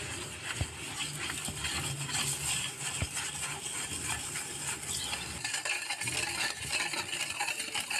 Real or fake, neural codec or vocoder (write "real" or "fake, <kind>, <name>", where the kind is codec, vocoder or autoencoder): real